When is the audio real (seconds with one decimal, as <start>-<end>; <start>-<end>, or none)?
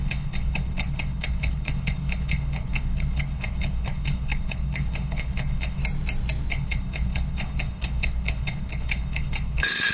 5.8-6.5